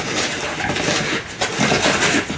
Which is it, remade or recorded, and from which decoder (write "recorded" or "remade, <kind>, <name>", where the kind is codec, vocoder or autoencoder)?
recorded